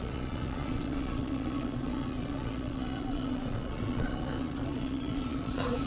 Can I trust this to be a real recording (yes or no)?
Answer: no